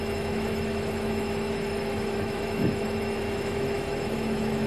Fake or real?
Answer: fake